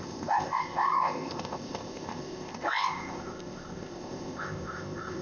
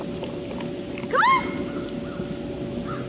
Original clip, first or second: second